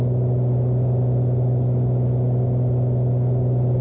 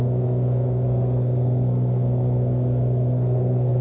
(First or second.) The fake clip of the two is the second